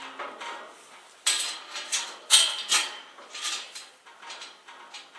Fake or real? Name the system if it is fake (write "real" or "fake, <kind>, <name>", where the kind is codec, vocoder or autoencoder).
real